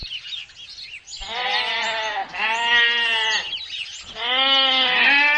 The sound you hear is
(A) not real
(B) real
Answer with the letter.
B